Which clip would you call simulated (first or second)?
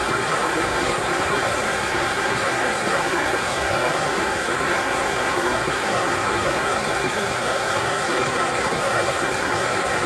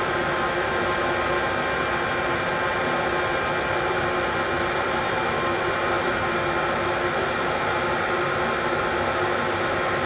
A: first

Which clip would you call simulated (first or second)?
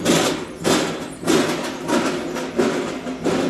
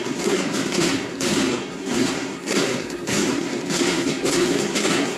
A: second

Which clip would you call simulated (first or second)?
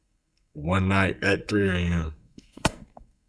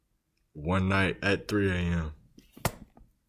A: first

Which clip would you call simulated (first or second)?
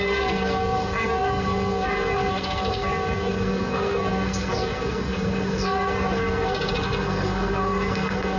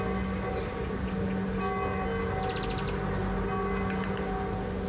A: first